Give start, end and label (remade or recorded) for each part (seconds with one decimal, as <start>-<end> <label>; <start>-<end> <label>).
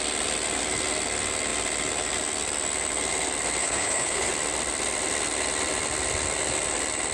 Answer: 0.0-3.6 recorded; 3.6-4.3 remade; 4.3-7.1 recorded